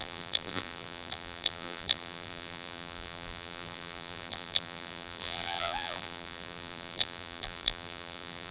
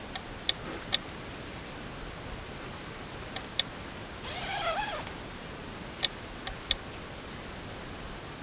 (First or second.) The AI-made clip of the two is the first